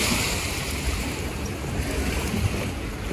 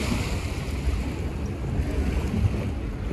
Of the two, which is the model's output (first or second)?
first